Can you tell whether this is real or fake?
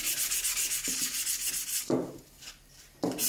real